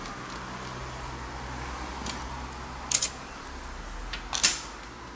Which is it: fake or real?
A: real